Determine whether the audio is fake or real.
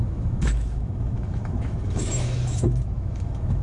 fake